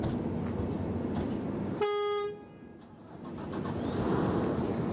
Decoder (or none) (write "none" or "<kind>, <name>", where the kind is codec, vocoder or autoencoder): none